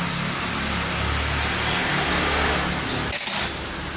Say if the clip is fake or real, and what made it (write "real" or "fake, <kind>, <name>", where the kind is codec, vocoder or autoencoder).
real